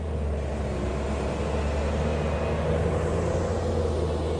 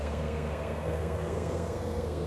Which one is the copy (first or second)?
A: second